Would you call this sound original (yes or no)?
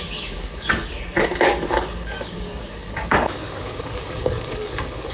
no